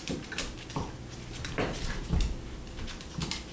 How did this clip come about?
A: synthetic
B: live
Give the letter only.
B